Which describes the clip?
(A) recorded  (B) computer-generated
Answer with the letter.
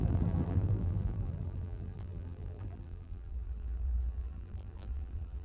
B